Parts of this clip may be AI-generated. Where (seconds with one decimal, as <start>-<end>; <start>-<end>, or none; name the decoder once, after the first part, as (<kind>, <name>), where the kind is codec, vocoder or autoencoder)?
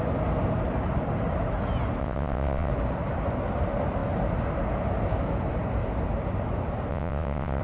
2.0-2.7 (vocoder, WaveNeXt); 6.9-7.6